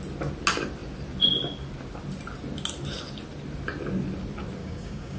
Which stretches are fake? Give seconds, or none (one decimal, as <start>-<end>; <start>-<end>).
4.6-5.2